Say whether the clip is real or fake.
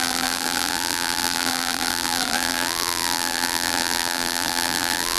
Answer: fake